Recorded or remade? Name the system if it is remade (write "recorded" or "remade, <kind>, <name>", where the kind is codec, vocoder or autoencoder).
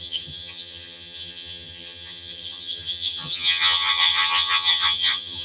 remade, vocoder, HiFi-GAN